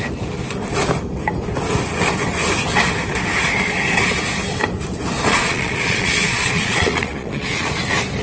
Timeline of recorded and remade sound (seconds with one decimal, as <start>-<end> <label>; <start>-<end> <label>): 0.0-5.3 recorded; 5.3-7.7 remade; 7.7-8.2 recorded